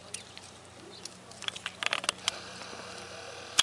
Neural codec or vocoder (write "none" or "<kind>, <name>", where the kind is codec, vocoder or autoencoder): none